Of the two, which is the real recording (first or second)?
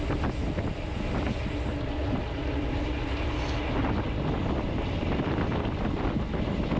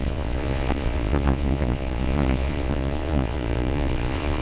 first